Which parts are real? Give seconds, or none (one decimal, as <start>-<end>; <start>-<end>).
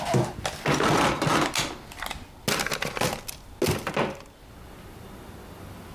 0.0-5.9